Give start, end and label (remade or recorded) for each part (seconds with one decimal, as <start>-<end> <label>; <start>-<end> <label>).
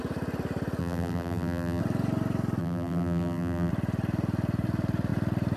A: 0.0-0.8 recorded; 0.8-1.8 remade; 1.8-2.6 recorded; 2.6-3.7 remade; 3.7-5.6 recorded